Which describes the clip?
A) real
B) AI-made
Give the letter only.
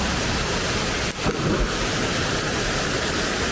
A